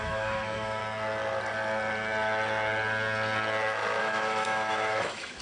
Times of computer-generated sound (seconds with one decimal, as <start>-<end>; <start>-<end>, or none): 0.0-0.8; 4.0-5.4